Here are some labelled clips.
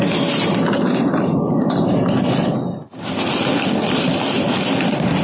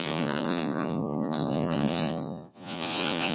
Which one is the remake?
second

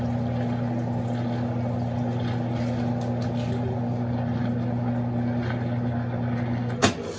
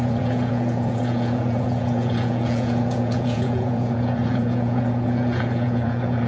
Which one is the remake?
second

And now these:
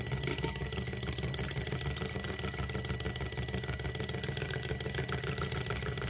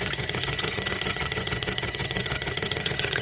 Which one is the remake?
second